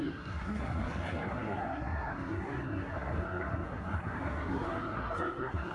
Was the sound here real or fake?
fake